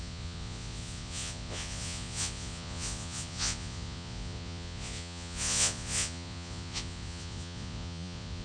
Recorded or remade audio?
remade